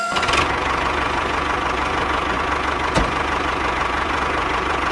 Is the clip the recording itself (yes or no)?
no